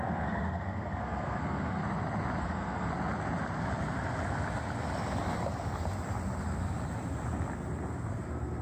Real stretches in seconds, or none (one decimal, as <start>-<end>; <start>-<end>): 1.8-2.4; 2.9-8.1